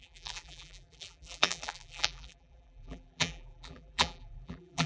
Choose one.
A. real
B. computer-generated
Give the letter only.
B